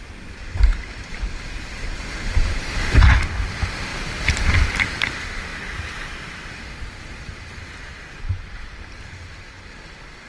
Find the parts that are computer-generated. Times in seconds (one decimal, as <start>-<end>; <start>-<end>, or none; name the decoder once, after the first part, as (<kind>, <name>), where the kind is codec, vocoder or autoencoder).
3.9-5.0 (vocoder, BigVGAN v2); 5.5-6.5